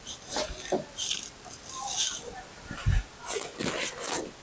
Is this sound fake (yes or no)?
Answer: no